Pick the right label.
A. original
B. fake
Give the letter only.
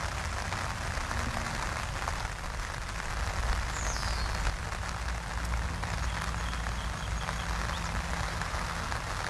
A